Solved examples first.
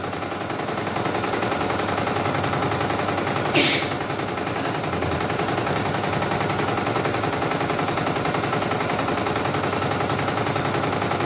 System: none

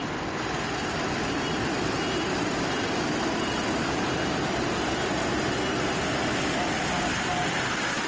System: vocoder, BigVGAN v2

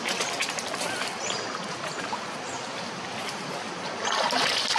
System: none